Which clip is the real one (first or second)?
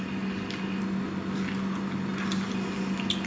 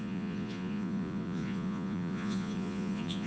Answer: first